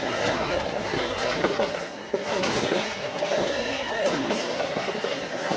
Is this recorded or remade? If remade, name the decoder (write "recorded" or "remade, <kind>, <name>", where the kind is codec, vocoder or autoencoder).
remade, codec, SNAC